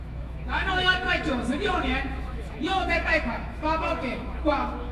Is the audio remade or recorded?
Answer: remade